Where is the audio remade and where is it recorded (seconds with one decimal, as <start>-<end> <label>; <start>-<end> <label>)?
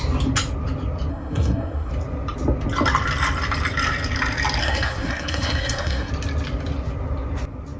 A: 0.0-1.1 recorded; 1.1-1.9 remade; 1.9-4.6 recorded; 4.6-6.1 remade; 6.1-7.8 recorded